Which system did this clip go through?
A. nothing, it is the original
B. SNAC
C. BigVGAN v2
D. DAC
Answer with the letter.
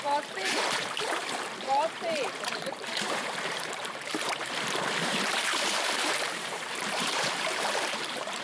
C